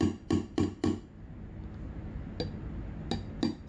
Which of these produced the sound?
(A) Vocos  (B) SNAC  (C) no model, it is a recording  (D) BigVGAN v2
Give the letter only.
C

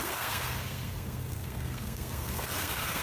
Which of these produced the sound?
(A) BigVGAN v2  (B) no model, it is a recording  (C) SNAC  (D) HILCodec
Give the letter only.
C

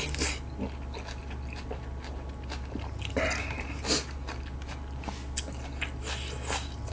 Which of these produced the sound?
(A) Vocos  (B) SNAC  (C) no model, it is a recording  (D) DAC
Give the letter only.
C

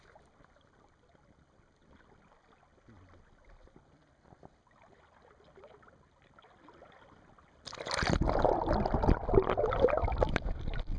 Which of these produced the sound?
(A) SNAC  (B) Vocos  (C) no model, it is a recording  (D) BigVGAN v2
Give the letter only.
C